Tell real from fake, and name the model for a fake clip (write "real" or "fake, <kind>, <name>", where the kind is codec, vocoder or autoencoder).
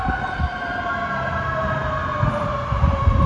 real